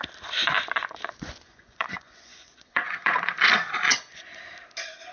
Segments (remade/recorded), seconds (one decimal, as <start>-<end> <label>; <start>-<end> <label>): 0.0-0.4 recorded; 0.4-3.5 remade; 3.5-3.9 recorded; 3.9-4.4 remade; 4.4-5.1 recorded